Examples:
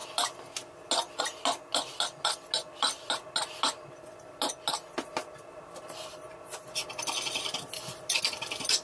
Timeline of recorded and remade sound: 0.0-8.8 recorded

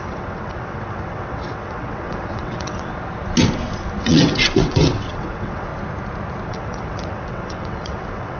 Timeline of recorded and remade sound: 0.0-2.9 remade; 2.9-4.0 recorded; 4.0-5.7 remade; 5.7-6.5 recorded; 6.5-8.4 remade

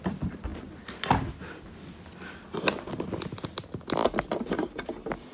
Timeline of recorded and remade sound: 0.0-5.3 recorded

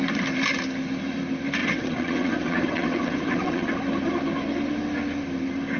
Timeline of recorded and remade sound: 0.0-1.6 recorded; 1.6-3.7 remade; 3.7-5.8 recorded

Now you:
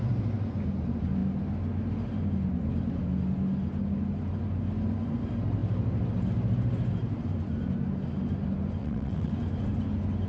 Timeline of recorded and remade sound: 0.0-8.8 recorded; 8.8-9.3 remade; 9.3-10.3 recorded